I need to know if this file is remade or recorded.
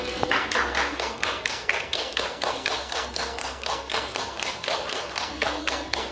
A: remade